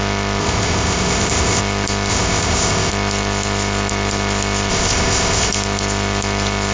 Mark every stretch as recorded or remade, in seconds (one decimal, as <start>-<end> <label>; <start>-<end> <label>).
0.0-0.4 recorded; 0.4-1.6 remade; 1.6-2.1 recorded; 2.1-2.9 remade; 2.9-4.7 recorded; 4.7-5.5 remade; 5.5-6.7 recorded